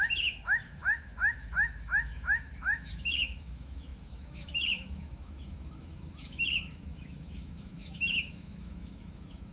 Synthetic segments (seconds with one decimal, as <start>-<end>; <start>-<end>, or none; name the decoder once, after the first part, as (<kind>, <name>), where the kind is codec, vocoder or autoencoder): 0.0-9.5 (autoencoder, DAC-VAE)